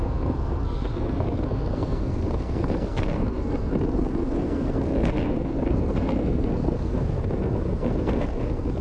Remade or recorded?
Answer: remade